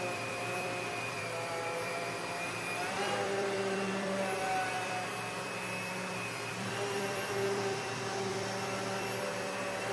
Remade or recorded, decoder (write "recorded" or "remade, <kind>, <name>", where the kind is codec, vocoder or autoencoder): remade, vocoder, BigVGAN v2